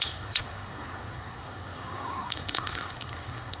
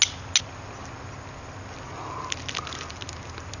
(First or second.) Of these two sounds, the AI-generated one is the first